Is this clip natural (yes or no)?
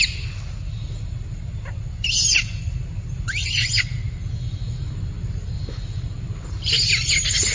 yes